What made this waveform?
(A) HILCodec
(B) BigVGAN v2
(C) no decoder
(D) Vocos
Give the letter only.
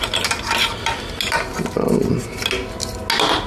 C